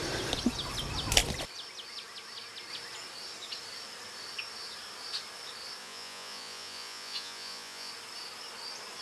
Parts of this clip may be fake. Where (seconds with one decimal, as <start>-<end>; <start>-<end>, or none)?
5.8-7.9